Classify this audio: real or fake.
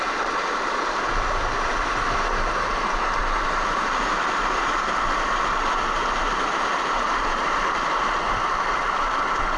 real